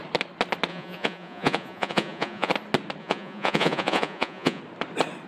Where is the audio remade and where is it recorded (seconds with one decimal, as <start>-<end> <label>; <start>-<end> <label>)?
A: 0.0-0.7 recorded; 0.7-2.5 remade; 2.5-3.0 recorded; 3.0-4.6 remade; 4.6-5.3 recorded